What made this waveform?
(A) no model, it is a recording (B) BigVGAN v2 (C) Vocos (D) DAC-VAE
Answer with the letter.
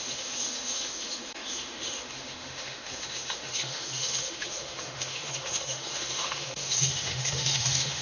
D